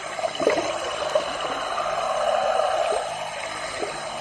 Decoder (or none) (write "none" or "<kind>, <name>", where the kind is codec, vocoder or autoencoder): none